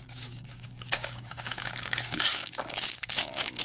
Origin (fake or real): fake